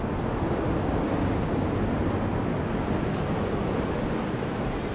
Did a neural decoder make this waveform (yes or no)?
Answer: no